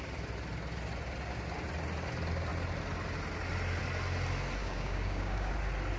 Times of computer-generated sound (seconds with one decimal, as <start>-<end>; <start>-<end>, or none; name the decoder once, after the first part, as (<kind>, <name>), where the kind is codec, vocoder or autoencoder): 4.6-5.5 (codec, DAC)